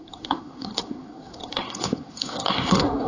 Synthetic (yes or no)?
yes